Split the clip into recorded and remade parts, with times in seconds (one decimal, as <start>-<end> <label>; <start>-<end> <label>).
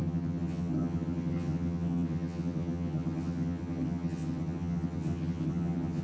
0.0-6.0 remade